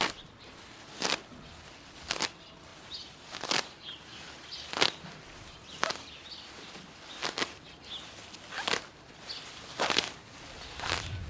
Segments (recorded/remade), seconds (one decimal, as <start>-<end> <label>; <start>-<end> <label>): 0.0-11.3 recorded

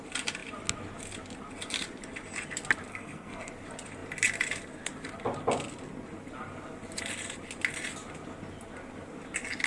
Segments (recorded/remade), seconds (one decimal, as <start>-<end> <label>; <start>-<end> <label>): 0.0-2.9 recorded; 2.9-3.5 remade; 3.5-9.7 recorded

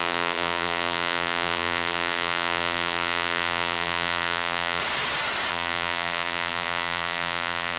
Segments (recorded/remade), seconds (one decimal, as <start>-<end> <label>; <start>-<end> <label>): 0.0-4.8 remade; 4.8-5.5 recorded; 5.5-7.8 remade

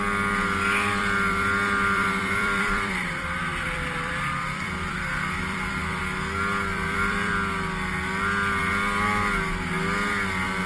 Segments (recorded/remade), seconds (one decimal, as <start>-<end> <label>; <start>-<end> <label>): 0.0-1.0 recorded; 1.0-6.0 remade; 6.0-6.7 recorded; 6.7-7.3 remade; 7.3-10.7 recorded

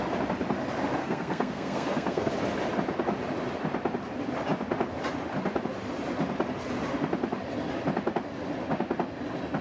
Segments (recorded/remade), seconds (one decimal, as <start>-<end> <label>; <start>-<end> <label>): 0.0-1.0 recorded; 1.0-2.3 remade; 2.3-9.6 recorded

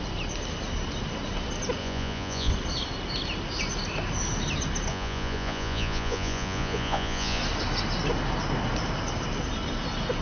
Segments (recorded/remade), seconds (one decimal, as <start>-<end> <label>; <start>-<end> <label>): 0.0-1.8 recorded; 1.8-2.5 remade; 2.5-4.9 recorded; 4.9-7.4 remade; 7.4-10.2 recorded

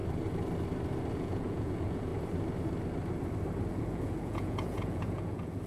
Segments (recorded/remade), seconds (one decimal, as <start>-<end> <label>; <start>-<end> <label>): 0.0-1.1 recorded; 1.1-2.1 remade; 2.1-3.7 recorded; 3.7-5.7 remade

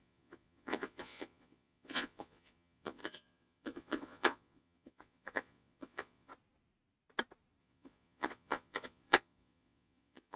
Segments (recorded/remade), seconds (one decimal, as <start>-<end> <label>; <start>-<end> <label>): 0.0-6.3 remade; 6.3-7.6 recorded; 7.6-10.4 remade